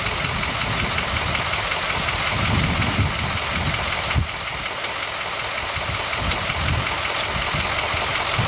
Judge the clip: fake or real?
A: real